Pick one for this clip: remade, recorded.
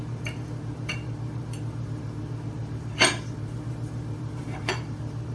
remade